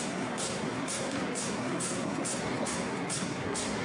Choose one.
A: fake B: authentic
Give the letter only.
A